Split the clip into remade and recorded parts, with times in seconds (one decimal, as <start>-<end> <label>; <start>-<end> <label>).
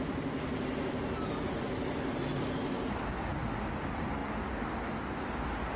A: 0.0-5.8 recorded